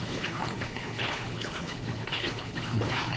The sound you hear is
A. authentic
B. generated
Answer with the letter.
B